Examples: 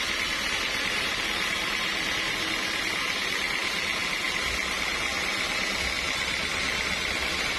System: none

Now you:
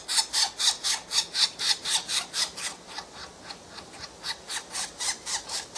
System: none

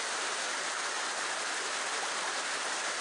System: none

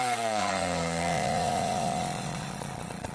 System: vocoder, Vocos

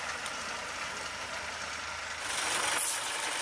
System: none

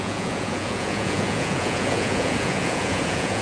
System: vocoder, Vocos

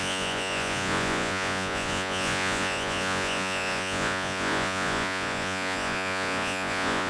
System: vocoder, Vocos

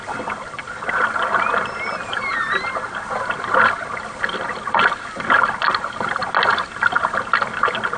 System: none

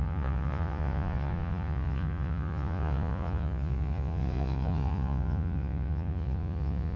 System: vocoder, Vocos